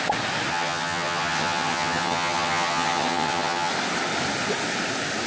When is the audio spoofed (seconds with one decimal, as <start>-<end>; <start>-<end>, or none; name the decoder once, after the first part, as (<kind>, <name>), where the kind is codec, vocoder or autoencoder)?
0.5-3.7 (vocoder, HiFi-GAN)